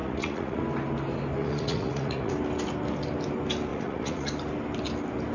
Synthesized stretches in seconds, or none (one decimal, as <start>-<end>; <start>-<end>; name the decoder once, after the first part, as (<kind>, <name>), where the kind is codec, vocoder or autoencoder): 0.0-0.6 (vocoder, Vocos); 1.4-2.3; 3.7-4.3

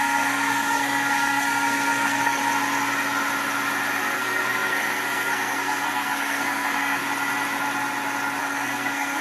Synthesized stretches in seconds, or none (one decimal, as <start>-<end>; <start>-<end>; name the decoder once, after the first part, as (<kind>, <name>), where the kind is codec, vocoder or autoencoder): 0.0-2.4 (codec, SNAC); 4.0-7.0; 8.4-9.2

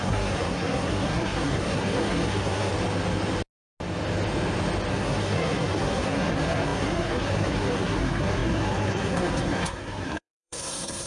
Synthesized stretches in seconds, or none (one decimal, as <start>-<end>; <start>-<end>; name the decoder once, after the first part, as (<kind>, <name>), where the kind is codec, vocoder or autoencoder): 0.0-2.7 (codec, SNAC); 4.9-11.1

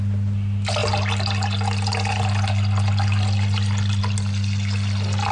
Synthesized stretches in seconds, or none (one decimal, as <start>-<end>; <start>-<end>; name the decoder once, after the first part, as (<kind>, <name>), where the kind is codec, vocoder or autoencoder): none

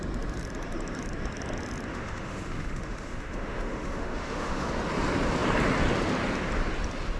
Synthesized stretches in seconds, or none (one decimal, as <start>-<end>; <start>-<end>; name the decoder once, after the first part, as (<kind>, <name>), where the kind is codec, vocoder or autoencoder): 1.9-4.7 (autoencoder, DAC-VAE)

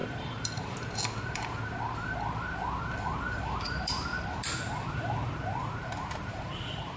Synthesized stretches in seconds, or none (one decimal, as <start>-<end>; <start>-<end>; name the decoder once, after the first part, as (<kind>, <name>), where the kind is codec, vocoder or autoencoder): 0.0-4.1 (vocoder, BigVGAN v2); 4.9-7.0

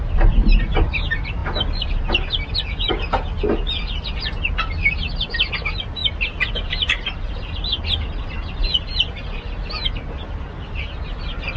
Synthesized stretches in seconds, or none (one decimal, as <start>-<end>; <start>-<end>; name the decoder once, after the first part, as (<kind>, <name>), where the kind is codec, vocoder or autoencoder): none